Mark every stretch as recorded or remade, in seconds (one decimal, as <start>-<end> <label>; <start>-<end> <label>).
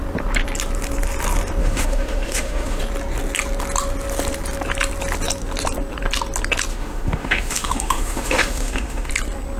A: 0.0-1.6 recorded; 1.6-2.8 remade; 2.8-6.7 recorded; 6.7-9.1 remade; 9.1-9.6 recorded